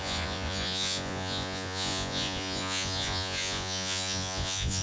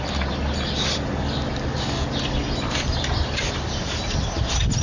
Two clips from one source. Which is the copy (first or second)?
first